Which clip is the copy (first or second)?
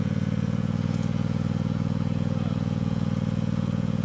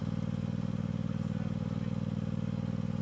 first